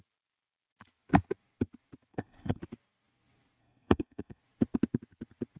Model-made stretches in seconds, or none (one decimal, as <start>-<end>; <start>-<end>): 2.1-2.6; 3.6-4.4